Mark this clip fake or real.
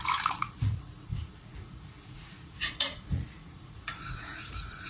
fake